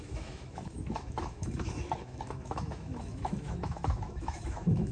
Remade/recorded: remade